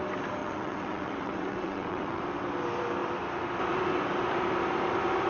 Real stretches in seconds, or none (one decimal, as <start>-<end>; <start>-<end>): 0.0-0.4; 2.2-5.3